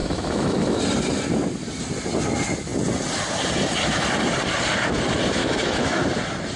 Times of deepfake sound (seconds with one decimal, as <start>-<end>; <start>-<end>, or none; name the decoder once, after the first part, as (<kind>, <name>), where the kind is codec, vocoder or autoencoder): 0.0-0.8 (autoencoder, DAC-VAE); 5.4-6.0